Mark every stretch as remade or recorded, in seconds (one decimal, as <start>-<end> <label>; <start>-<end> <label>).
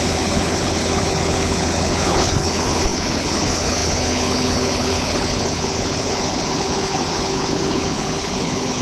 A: 0.0-8.8 remade